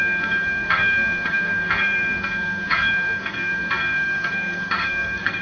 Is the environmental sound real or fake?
fake